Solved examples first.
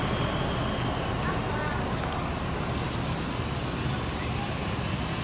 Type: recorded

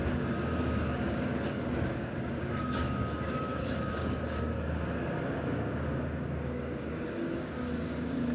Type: remade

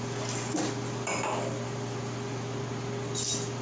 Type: recorded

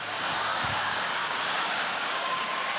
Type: remade